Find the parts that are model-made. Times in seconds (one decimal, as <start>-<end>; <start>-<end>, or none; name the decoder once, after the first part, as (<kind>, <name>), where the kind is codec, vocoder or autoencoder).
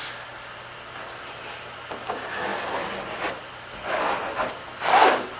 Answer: none